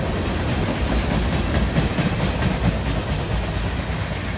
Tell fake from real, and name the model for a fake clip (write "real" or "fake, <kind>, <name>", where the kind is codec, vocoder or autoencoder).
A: real